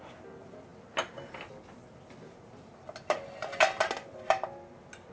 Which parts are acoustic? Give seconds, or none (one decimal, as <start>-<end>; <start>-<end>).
0.0-5.1